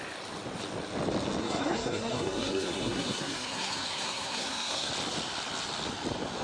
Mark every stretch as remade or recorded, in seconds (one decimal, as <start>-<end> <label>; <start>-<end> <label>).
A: 0.0-1.4 recorded; 1.4-4.9 remade; 4.9-6.4 recorded